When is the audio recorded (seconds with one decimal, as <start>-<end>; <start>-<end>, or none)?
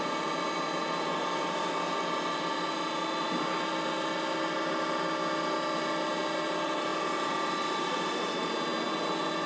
0.0-9.5